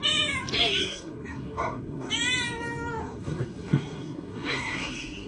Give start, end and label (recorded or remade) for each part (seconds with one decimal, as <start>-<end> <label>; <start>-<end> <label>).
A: 0.0-0.8 recorded; 0.8-2.1 remade; 2.1-3.0 recorded; 3.0-5.3 remade